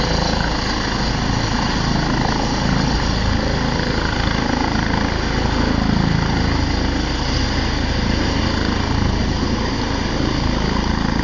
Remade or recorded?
recorded